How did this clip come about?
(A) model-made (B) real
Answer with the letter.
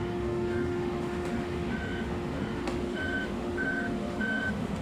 A